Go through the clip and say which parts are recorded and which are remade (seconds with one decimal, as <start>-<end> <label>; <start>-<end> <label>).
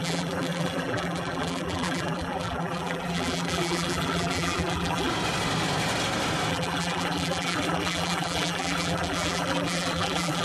0.0-5.1 remade; 5.1-6.5 recorded; 6.5-10.4 remade